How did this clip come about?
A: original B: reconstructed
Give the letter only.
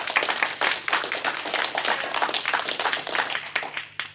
A